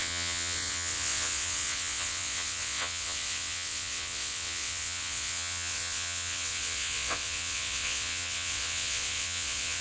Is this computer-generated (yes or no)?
yes